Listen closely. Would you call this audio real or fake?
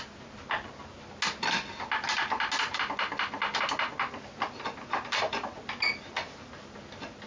real